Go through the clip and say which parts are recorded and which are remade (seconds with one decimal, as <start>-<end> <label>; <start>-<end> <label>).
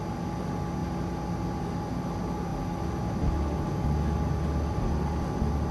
0.0-5.7 recorded